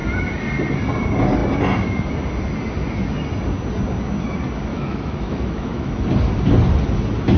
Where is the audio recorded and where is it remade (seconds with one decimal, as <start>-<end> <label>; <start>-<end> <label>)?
0.0-4.7 recorded; 4.7-5.9 remade; 5.9-7.4 recorded